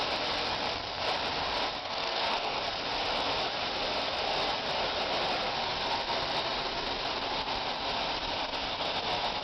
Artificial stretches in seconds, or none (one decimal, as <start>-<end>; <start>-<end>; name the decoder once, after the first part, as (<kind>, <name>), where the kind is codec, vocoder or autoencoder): 1.8-2.6 (codec, SNAC)